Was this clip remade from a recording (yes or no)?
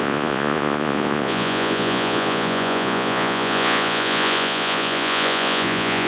yes